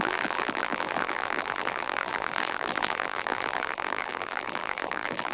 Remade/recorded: remade